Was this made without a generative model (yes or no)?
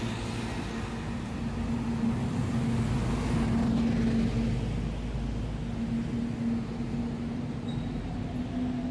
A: yes